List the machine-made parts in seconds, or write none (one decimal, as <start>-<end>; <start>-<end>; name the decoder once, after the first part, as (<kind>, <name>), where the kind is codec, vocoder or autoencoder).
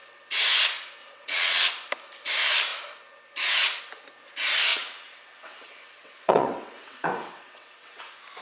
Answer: 1.0-1.7 (vocoder, WaveNeXt); 4.7-8.0